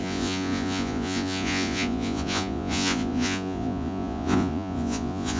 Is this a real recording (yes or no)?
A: no